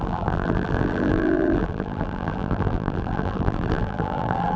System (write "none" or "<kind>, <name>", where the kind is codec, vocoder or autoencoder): vocoder, BigVGAN v2